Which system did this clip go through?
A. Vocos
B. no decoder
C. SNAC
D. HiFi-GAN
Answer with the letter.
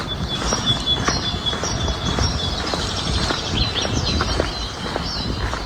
B